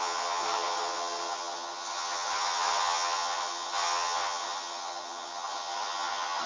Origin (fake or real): fake